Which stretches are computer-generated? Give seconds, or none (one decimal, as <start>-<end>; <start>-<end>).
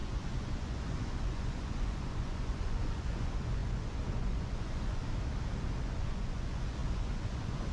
0.0-5.0; 5.8-7.7